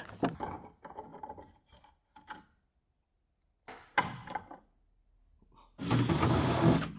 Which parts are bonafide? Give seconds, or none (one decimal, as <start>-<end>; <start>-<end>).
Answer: 0.0-1.1; 1.9-7.0